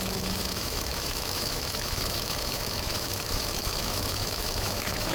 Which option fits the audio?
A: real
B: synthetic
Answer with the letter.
B